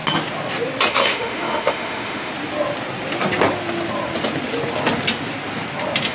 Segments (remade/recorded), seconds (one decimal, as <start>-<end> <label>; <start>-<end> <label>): 0.0-0.9 recorded; 0.9-2.3 remade; 2.3-6.1 recorded

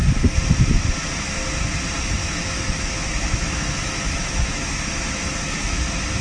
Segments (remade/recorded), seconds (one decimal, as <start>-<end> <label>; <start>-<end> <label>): 0.0-2.2 recorded; 2.2-5.8 remade; 5.8-6.2 recorded

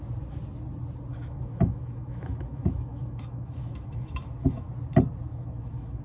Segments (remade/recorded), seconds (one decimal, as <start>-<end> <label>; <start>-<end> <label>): 0.0-1.1 recorded; 1.1-4.7 remade; 4.7-5.3 recorded; 5.3-6.0 remade

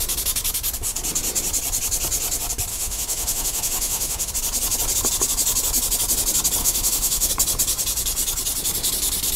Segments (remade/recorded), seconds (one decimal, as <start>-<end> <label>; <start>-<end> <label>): 0.0-2.7 recorded; 2.7-4.3 remade; 4.3-6.6 recorded; 6.6-7.3 remade; 7.3-9.4 recorded